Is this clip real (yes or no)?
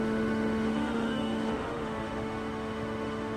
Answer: no